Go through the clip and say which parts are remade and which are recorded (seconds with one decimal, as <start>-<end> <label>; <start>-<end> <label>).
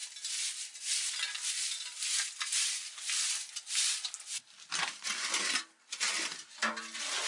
0.0-7.3 recorded